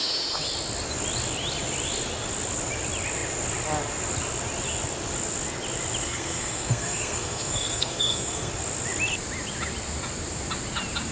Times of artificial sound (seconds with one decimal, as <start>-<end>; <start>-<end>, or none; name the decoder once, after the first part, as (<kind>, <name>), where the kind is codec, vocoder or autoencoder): 6.0-8.5 (codec, SNAC)